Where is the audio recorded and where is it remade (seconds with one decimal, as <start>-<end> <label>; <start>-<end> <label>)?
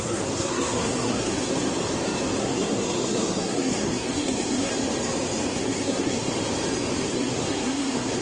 0.0-1.5 remade; 1.5-2.4 recorded; 2.4-4.7 remade; 4.7-5.5 recorded; 5.5-6.3 remade; 6.3-7.1 recorded; 7.1-8.2 remade